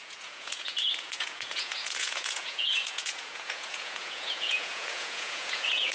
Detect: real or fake fake